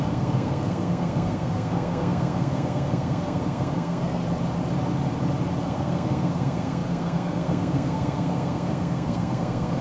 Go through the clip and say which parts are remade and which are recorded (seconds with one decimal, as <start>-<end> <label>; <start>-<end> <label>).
0.0-4.2 remade; 4.2-5.6 recorded; 5.6-9.8 remade